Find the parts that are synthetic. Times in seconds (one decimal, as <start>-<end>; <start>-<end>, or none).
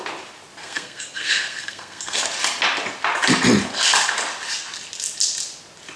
0.6-2.2